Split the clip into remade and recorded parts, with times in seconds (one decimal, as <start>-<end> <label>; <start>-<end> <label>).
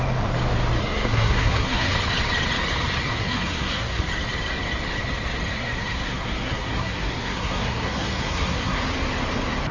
0.0-0.8 recorded; 0.8-1.9 remade; 1.9-3.1 recorded; 3.1-4.1 remade; 4.1-5.5 recorded; 5.5-8.8 remade; 8.8-9.7 recorded